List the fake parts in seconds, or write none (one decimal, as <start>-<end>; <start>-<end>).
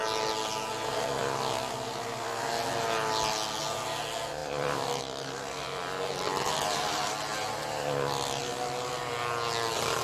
4.4-5.0